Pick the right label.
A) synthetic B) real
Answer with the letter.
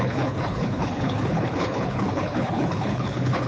A